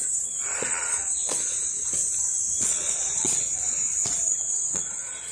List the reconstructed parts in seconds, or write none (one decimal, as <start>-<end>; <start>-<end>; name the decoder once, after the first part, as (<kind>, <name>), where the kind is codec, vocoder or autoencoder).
0.0-2.0 (vocoder, Vocos); 2.6-5.3